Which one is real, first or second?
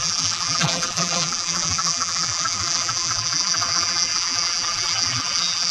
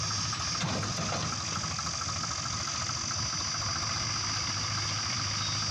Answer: second